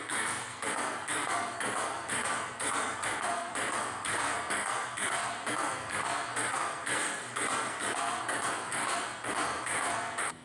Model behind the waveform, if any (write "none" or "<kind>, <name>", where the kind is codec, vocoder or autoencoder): codec, SNAC